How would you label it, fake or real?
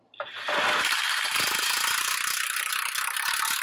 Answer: real